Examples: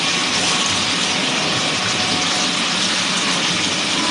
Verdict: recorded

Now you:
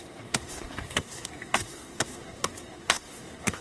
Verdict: remade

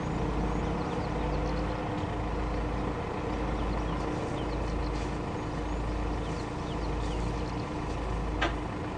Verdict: recorded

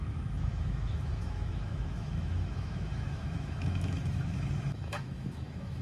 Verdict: remade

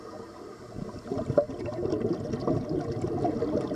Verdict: recorded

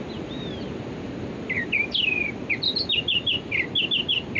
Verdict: recorded